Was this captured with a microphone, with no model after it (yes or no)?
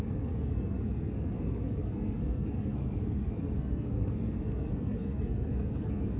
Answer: no